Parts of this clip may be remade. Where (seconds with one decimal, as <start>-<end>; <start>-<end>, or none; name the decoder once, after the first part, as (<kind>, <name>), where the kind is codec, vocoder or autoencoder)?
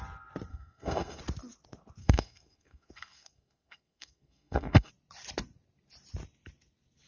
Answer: 0.5-1.2 (codec, SNAC); 2.0-4.9